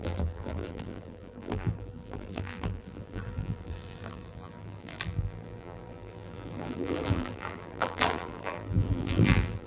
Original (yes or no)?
no